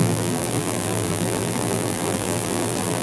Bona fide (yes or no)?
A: no